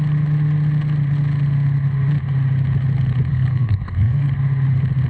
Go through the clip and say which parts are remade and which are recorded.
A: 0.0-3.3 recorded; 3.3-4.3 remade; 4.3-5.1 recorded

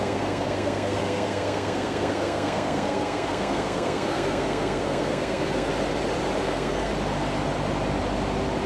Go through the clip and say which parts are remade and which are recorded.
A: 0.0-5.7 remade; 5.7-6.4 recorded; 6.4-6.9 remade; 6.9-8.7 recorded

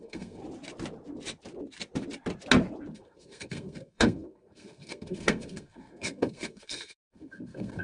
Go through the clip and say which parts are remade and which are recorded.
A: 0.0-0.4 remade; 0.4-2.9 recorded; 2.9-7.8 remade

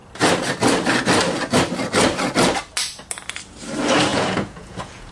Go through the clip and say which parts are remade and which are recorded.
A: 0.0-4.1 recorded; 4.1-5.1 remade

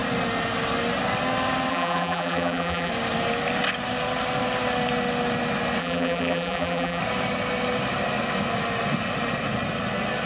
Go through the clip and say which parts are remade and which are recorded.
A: 0.0-1.7 recorded; 1.7-2.9 remade; 2.9-5.8 recorded; 5.8-7.0 remade; 7.0-10.3 recorded

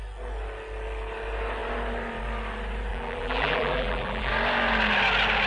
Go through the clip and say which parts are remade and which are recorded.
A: 0.0-2.9 recorded; 2.9-4.3 remade; 4.3-5.5 recorded

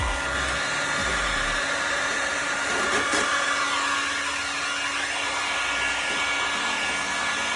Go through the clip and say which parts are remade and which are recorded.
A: 0.0-1.0 recorded; 1.0-3.5 remade; 3.5-7.6 recorded